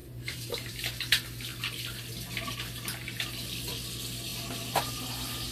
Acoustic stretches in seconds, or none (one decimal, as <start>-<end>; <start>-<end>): 0.7-5.5